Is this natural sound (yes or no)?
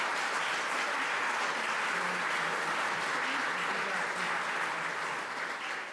yes